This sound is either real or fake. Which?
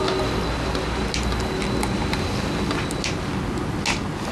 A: real